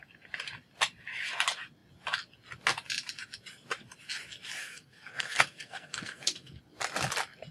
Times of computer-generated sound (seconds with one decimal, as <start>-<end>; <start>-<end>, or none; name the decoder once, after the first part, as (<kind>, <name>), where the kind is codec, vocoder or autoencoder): 4.6-6.6 (codec, SNAC)